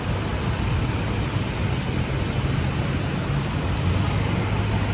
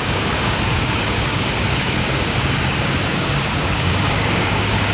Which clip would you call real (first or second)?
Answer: first